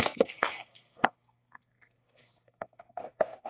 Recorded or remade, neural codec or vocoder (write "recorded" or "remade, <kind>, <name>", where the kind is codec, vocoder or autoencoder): remade, codec, SNAC